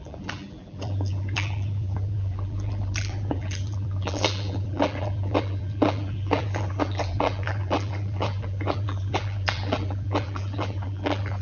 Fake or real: fake